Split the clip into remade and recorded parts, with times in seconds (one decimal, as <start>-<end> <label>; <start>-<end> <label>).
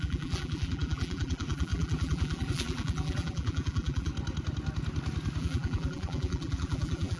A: 0.0-4.1 remade; 4.1-5.4 recorded; 5.4-7.2 remade